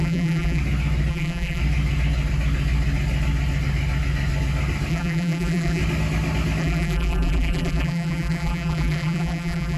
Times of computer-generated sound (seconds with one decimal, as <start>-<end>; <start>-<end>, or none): 0.0-0.6; 1.1-1.6; 4.9-5.8; 6.6-9.8